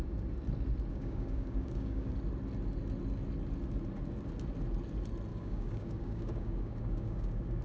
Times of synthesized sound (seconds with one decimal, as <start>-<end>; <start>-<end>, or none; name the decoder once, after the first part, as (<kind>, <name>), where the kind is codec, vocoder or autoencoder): 0.9-2.1 (codec, DAC); 5.3-7.6